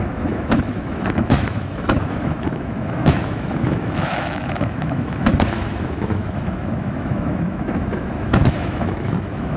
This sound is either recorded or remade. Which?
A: remade